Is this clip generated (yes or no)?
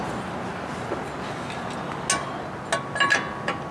no